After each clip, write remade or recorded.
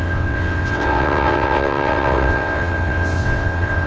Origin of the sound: remade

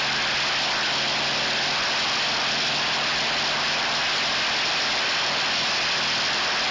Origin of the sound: recorded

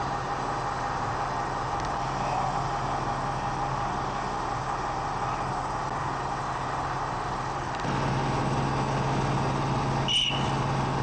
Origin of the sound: recorded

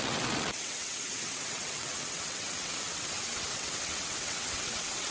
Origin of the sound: remade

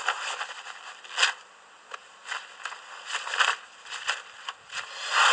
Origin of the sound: recorded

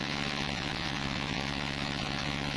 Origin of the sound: remade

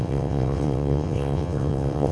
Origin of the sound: remade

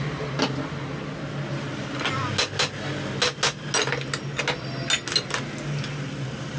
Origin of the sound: recorded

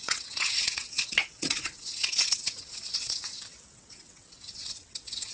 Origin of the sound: remade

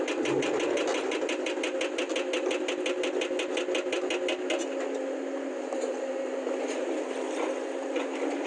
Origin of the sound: recorded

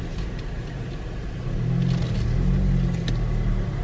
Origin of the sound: recorded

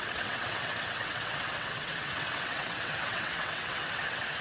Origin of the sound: remade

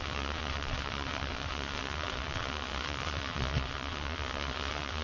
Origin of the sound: remade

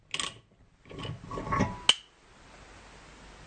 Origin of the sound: recorded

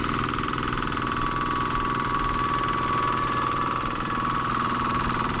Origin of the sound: recorded